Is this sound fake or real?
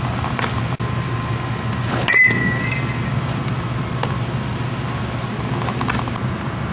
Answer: real